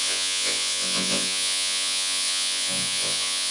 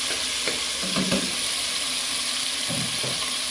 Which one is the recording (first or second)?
second